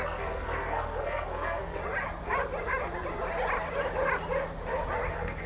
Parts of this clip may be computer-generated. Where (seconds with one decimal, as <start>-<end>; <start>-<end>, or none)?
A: 0.0-1.8; 5.1-5.5